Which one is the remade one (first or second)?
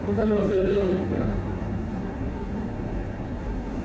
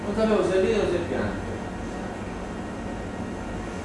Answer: first